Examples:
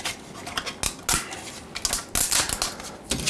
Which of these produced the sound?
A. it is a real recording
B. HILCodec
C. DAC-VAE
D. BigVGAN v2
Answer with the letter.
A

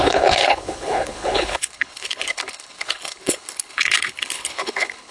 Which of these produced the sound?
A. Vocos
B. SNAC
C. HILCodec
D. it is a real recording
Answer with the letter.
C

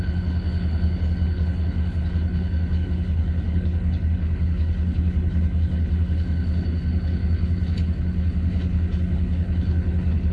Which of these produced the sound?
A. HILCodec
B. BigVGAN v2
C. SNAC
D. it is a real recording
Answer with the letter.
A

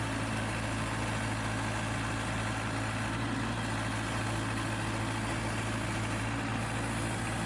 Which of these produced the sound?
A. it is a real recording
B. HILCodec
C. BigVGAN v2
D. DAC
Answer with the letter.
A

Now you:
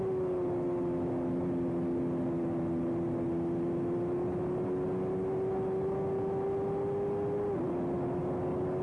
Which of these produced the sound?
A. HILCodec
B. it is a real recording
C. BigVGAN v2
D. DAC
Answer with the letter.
B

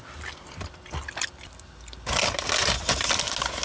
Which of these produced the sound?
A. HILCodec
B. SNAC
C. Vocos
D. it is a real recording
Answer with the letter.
D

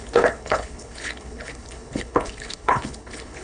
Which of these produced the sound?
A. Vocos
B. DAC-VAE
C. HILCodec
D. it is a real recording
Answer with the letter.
C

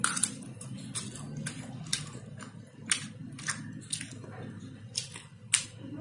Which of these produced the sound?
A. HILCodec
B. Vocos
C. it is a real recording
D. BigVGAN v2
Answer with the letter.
C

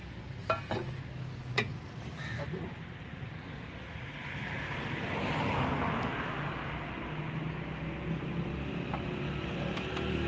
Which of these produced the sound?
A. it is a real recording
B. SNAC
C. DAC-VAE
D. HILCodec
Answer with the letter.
A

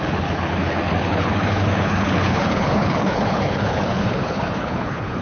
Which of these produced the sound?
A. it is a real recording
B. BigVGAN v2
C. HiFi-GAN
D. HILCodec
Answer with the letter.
D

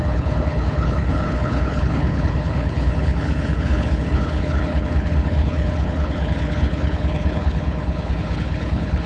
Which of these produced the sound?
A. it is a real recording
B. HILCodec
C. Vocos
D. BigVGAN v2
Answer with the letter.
B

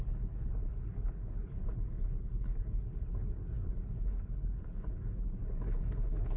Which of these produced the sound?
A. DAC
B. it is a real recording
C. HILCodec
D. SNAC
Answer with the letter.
C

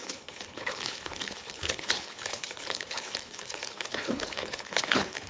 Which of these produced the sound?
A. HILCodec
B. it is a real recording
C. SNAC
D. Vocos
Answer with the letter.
A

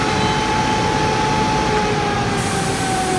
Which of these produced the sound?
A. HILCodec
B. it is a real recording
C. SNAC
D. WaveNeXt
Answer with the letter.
B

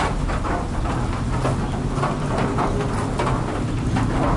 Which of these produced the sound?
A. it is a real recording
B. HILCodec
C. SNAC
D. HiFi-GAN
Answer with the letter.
A